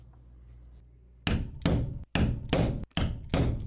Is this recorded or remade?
recorded